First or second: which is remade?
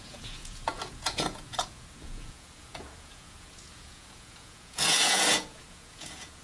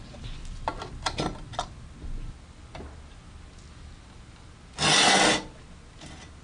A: first